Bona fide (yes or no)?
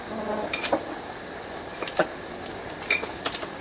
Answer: yes